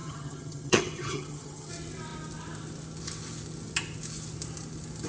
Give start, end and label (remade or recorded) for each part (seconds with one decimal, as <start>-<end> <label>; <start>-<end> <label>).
0.0-1.7 remade; 1.7-5.1 recorded